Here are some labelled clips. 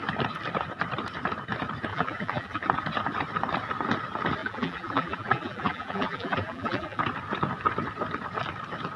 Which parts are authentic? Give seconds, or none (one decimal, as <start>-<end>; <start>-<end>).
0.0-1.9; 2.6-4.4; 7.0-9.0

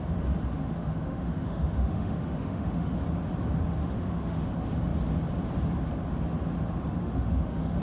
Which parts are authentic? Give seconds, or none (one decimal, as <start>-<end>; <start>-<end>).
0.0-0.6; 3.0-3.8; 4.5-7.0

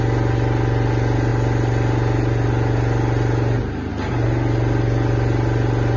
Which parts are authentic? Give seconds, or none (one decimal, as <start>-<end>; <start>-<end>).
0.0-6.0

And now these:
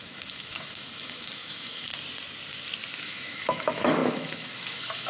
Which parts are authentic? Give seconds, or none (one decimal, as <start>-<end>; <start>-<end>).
1.9-3.0

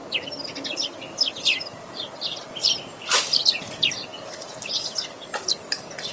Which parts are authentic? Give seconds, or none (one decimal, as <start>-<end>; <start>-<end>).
0.0-3.1; 4.1-4.7

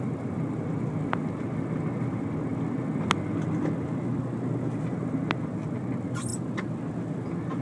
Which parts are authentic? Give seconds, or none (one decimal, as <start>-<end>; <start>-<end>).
0.0-7.6

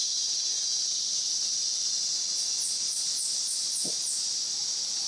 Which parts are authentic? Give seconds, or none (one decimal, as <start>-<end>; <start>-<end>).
0.0-5.1

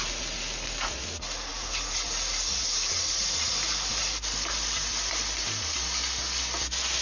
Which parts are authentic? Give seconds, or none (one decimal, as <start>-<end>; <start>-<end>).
0.0-1.5; 3.5-3.9; 5.1-7.0